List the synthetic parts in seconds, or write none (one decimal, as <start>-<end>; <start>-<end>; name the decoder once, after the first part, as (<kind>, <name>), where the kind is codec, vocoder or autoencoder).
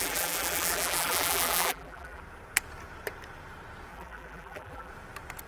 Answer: 0.0-2.2 (vocoder, BigVGAN v2); 3.9-4.9